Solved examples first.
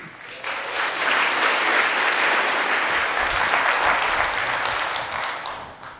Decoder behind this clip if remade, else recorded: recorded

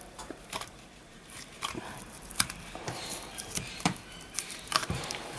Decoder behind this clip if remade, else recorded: remade, vocoder, BigVGAN v2